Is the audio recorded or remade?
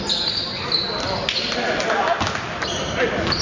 recorded